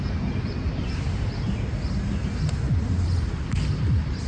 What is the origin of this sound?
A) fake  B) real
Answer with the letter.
B